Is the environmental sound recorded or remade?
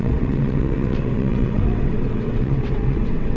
remade